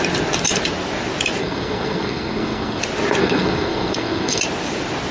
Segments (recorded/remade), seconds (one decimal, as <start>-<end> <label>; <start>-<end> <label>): 0.0-1.4 recorded; 1.4-2.8 remade; 2.8-3.2 recorded; 3.2-4.4 remade; 4.4-5.1 recorded